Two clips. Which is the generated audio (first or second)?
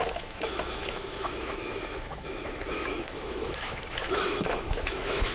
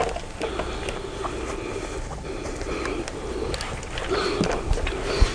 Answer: first